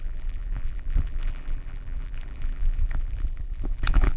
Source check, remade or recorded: remade